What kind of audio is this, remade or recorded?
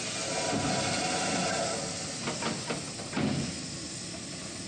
recorded